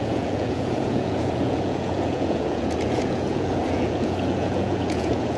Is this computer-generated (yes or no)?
yes